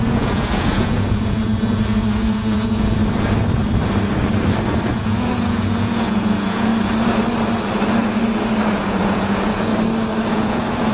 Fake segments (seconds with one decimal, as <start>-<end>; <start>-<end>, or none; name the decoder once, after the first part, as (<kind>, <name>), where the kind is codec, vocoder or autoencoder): 0.0-3.0 (vocoder, Vocos); 4.9-6.7; 8.7-9.7; 10.3-10.9

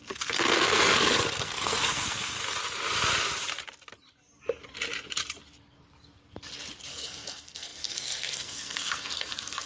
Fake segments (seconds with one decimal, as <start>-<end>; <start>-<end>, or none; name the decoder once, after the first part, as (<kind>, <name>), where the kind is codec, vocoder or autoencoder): 0.0-2.4 (codec, SNAC); 6.9-9.7